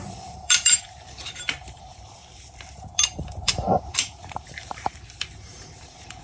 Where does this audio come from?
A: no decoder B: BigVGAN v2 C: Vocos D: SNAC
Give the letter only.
B